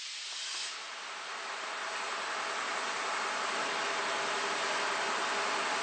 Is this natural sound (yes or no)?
yes